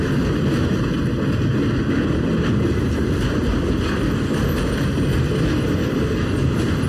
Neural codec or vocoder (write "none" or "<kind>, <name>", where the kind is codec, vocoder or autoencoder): none